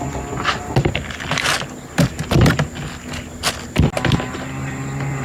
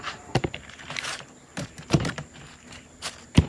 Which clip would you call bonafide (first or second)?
first